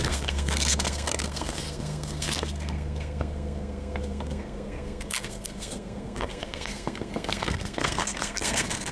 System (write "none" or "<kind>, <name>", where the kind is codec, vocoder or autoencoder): codec, SNAC